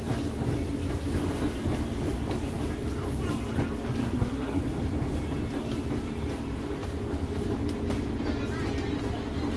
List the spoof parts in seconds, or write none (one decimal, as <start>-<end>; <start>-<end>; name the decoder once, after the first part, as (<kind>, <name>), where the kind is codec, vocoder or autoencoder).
4.0-4.6 (codec, SNAC)